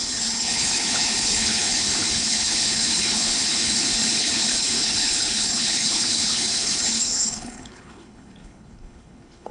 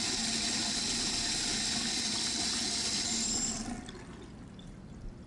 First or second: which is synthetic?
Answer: first